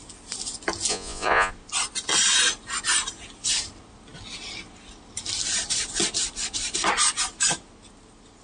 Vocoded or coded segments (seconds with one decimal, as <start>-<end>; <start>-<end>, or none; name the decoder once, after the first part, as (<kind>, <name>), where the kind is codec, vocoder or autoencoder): 0.9-1.5 (vocoder, Vocos)